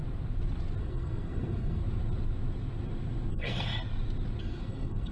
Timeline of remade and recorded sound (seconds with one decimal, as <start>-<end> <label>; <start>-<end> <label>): 0.0-0.8 recorded; 0.8-1.8 remade; 1.8-3.3 recorded; 3.3-3.7 remade; 3.7-4.4 recorded; 4.4-5.1 remade